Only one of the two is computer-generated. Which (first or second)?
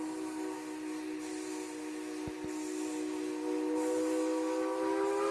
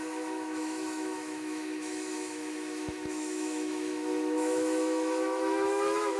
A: second